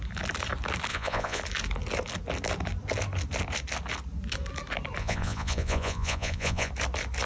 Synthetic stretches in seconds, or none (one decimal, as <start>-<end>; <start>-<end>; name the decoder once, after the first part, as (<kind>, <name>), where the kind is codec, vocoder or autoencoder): 0.9-1.4 (vocoder, Vocos); 5.0-6.7

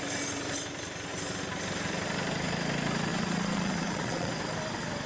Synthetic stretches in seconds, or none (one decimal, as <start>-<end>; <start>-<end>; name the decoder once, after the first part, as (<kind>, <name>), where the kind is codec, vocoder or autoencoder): 3.1-4.3 (vocoder, Vocos)

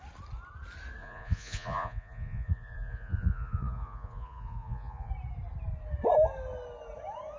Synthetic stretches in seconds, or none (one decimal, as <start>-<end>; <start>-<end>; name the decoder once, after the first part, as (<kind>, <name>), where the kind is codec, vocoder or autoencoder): 1.0-5.1 (vocoder, Vocos)

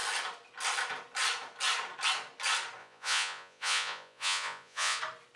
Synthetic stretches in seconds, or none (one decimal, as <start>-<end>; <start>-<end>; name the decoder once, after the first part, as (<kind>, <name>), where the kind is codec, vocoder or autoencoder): 2.8-5.0 (vocoder, Vocos)

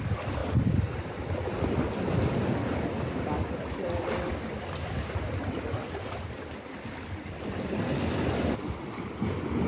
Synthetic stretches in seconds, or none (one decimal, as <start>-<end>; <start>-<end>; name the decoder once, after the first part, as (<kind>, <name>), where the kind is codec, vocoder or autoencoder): none